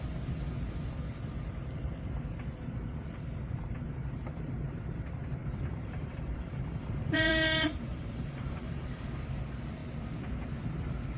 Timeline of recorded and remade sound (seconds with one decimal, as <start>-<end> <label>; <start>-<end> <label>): 0.0-5.4 recorded; 5.4-7.3 remade; 7.3-7.9 recorded; 7.9-9.2 remade; 9.2-11.2 recorded